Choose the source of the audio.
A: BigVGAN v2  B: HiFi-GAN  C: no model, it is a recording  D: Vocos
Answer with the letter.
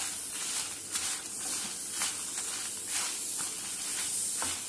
C